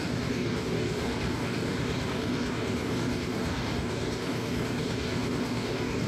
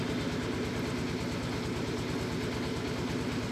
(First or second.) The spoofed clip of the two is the first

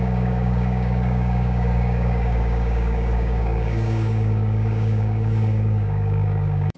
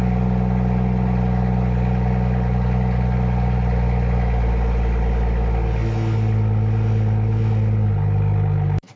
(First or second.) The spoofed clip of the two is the first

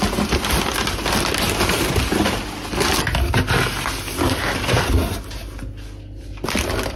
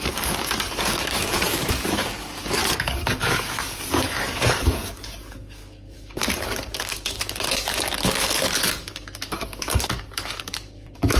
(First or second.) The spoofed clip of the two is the second